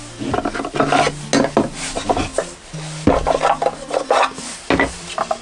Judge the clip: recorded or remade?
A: recorded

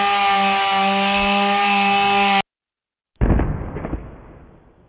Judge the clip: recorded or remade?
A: recorded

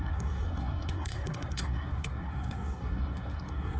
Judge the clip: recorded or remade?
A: remade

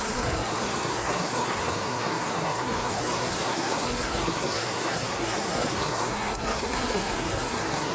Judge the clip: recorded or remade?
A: remade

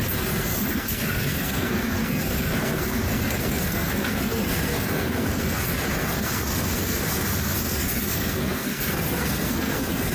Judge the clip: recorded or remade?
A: remade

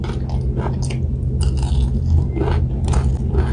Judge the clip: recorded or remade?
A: recorded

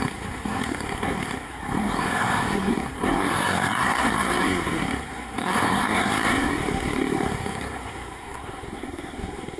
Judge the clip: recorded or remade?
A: remade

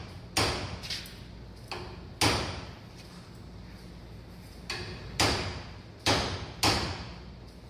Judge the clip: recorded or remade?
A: recorded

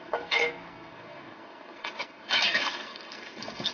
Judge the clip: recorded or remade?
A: remade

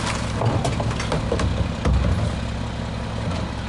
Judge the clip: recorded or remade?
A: recorded